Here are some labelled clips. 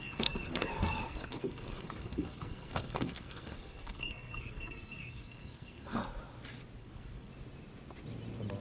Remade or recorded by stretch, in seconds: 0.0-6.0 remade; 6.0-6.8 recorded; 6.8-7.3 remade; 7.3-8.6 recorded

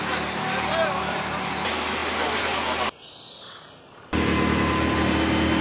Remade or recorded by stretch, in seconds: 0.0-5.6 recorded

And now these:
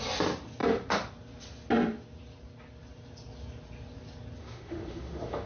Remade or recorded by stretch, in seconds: 0.0-4.4 recorded; 4.4-5.5 remade